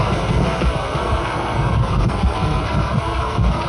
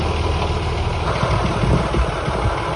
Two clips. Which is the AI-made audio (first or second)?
first